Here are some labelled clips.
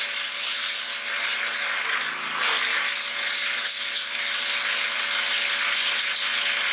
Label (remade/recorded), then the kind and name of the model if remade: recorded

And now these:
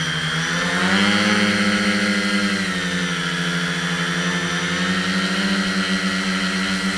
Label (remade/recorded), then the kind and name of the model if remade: recorded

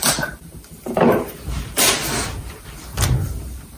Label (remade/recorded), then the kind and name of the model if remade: remade, vocoder, BigVGAN v2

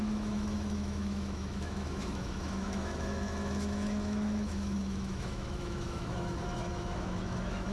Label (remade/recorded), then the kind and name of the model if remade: remade, autoencoder, DAC-VAE